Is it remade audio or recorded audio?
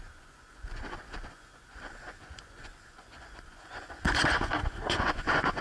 remade